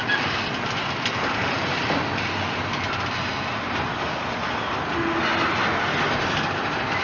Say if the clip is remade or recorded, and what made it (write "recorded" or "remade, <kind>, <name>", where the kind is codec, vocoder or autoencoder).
recorded